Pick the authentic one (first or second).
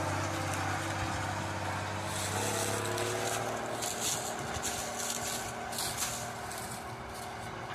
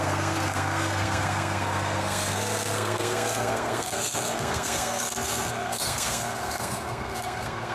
first